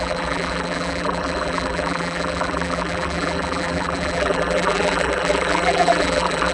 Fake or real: fake